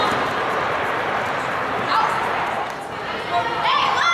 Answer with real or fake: real